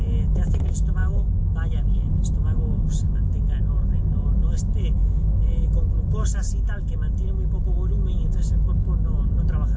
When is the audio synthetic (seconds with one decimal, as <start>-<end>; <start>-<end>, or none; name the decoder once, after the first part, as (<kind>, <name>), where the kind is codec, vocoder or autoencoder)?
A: none